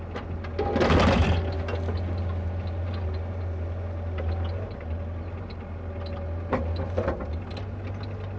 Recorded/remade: recorded